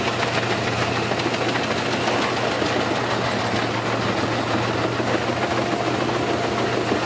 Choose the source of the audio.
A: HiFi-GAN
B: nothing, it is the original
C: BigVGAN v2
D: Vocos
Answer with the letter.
B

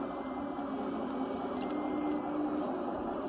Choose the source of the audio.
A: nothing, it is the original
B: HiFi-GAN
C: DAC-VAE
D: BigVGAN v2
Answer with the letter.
A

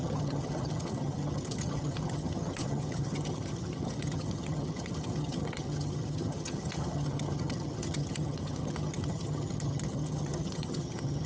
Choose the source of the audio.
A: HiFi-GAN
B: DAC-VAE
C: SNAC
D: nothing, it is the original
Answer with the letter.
A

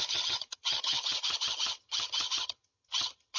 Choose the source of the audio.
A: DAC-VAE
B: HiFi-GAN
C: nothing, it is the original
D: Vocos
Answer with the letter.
B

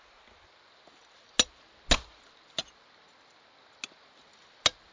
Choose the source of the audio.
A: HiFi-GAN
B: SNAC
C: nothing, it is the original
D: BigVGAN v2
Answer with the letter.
C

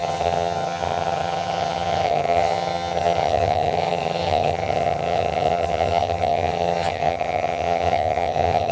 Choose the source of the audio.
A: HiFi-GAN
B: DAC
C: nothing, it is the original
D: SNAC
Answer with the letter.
A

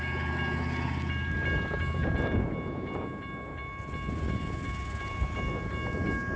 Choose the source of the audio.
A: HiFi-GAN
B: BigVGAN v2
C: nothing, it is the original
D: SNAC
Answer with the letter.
C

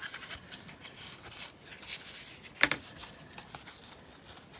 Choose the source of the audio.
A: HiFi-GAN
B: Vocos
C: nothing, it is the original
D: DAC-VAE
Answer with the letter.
C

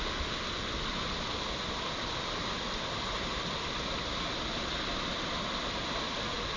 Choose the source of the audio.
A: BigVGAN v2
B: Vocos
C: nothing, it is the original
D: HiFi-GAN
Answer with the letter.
C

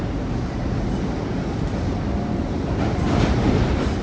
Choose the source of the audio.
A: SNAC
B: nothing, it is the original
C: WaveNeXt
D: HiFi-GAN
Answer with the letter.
B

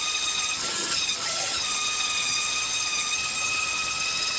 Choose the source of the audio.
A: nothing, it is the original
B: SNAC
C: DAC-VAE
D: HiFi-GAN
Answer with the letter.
D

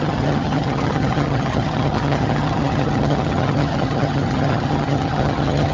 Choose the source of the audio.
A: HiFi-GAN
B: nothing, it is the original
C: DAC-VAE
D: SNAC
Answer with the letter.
A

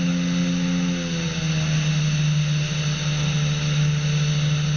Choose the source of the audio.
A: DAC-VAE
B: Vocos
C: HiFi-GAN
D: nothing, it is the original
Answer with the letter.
D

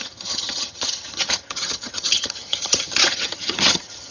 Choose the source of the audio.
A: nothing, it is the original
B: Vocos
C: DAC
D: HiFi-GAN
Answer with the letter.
D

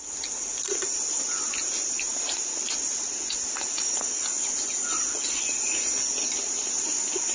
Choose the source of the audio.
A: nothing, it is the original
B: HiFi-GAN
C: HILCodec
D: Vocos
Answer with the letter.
A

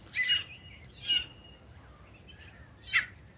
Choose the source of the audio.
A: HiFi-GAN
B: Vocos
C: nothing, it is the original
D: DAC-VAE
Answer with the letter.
C